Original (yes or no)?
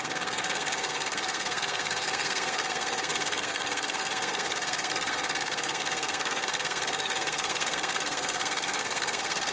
no